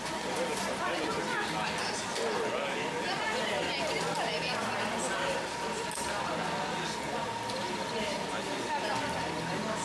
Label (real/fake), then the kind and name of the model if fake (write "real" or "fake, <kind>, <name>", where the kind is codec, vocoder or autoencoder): real